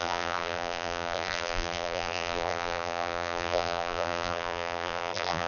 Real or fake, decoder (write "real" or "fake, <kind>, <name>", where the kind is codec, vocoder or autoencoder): fake, vocoder, BigVGAN v2